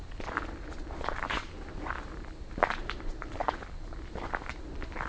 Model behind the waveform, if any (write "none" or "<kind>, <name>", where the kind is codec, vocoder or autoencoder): none